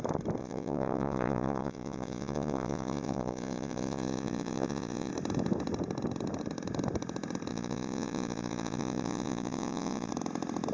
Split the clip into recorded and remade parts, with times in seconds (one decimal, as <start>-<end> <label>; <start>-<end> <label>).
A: 0.0-0.4 recorded; 0.4-5.1 remade; 5.1-7.5 recorded; 7.5-10.1 remade; 10.1-10.7 recorded